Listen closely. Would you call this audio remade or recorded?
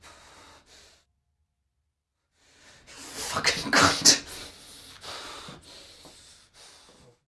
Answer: recorded